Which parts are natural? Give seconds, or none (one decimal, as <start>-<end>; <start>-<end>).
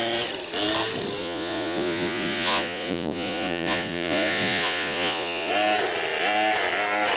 0.0-1.2; 5.5-7.2